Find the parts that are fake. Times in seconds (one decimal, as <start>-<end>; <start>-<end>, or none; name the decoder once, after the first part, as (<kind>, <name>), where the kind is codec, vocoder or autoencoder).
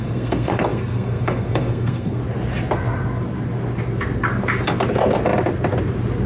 0.0-2.2 (codec, SNAC)